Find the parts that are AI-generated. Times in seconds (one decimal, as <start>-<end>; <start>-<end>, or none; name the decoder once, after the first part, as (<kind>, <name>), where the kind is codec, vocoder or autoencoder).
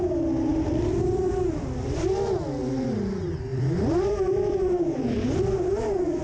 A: 0.5-2.6 (vocoder, BigVGAN v2); 3.5-6.2